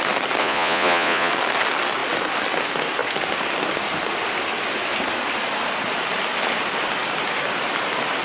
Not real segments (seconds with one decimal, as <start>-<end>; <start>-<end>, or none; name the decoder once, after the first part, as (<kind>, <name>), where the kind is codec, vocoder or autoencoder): 0.4-1.3 (vocoder, Vocos)